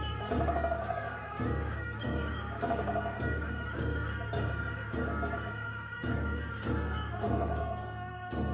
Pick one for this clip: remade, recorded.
remade